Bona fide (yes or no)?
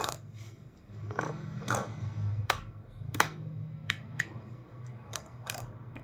no